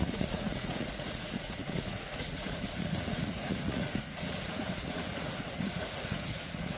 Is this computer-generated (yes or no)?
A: yes